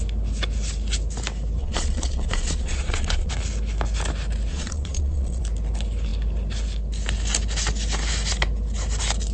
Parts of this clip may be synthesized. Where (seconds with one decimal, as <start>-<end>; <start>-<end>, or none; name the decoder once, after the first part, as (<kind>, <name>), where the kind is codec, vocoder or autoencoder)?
1.6-3.3 (vocoder, Vocos); 4.5-5.4